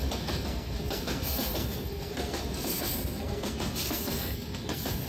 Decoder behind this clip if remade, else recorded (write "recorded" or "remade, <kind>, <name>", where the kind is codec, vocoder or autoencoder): remade, codec, SNAC